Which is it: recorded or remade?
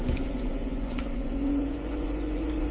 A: remade